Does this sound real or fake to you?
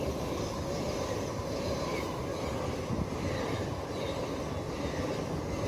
real